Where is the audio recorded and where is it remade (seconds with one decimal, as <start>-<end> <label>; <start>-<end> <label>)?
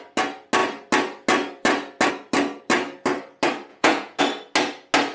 0.0-3.7 recorded; 3.7-4.2 remade; 4.2-5.1 recorded